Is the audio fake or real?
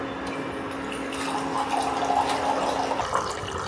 real